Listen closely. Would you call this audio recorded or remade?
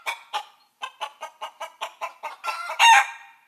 remade